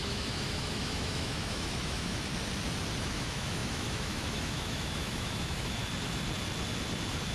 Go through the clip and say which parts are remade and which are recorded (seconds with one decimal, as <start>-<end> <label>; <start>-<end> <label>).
0.0-2.3 remade; 2.3-3.0 recorded; 3.0-5.8 remade; 5.8-7.3 recorded